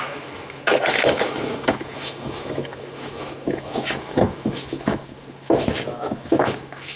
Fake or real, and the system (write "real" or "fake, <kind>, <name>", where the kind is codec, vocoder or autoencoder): fake, autoencoder, DAC-VAE